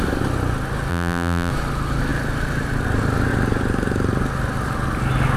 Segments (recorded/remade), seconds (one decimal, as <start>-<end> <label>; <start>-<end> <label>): 0.0-0.9 recorded; 0.9-1.5 remade; 1.5-5.4 recorded